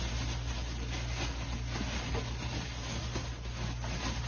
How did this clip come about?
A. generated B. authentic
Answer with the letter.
B